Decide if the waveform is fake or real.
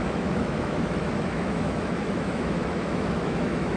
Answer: fake